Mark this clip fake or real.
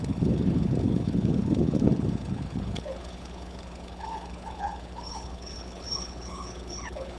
fake